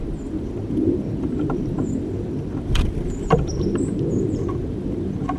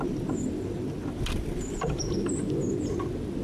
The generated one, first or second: first